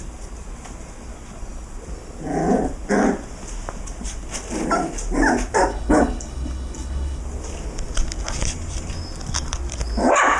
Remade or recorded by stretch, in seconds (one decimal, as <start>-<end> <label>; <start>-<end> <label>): 0.0-5.7 recorded; 5.7-7.2 remade; 7.2-10.4 recorded